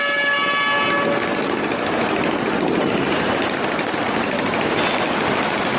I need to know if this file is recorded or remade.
recorded